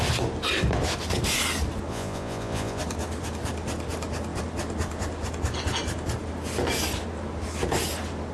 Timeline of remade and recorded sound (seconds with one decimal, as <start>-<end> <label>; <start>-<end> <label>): 0.0-1.9 recorded; 1.9-2.8 remade; 2.8-8.3 recorded